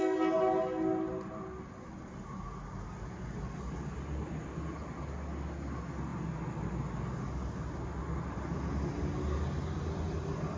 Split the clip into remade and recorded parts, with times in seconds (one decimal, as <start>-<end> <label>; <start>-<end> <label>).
0.0-10.6 recorded